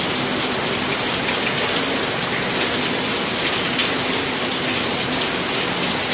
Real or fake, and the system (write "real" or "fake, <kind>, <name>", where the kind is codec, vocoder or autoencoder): real